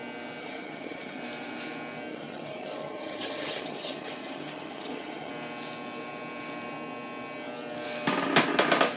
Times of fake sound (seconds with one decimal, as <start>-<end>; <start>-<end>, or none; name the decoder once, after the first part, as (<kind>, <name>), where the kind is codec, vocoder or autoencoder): 0.4-1.2 (vocoder, HiFi-GAN); 2.1-5.3